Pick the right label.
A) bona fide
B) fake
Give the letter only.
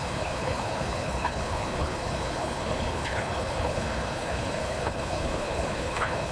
B